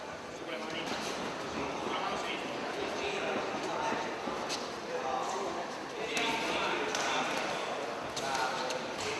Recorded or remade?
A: remade